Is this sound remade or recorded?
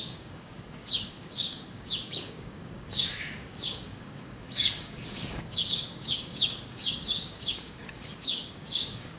remade